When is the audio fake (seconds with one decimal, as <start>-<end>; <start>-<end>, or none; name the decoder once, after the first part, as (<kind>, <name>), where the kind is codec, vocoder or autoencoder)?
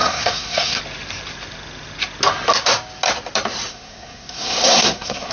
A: 0.0-0.8 (codec, SNAC); 3.7-5.3